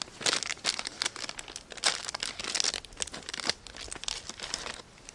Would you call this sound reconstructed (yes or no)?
no